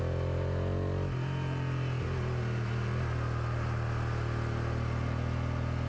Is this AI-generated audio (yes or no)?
no